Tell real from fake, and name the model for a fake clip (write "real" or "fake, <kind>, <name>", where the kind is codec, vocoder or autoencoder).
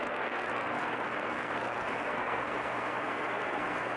fake, codec, SNAC